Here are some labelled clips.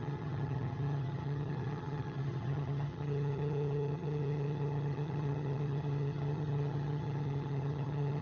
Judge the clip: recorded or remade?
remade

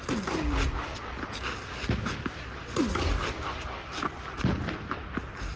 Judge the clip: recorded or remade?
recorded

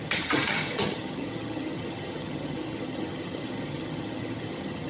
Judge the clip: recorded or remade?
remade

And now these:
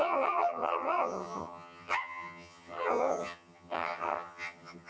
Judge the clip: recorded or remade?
remade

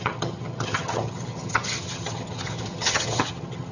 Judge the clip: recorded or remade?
remade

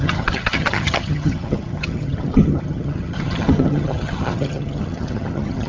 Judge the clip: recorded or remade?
remade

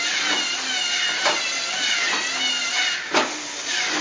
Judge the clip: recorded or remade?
recorded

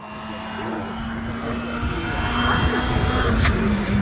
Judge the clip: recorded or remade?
recorded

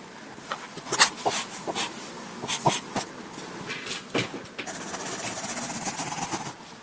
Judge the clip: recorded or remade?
recorded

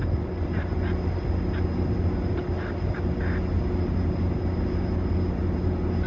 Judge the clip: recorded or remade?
recorded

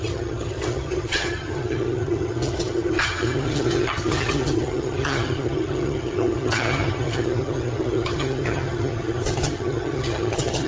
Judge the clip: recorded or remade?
remade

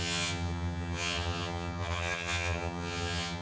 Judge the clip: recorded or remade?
remade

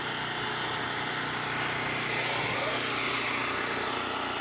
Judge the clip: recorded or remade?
recorded